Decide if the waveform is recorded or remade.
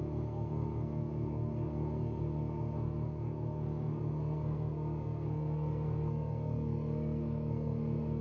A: remade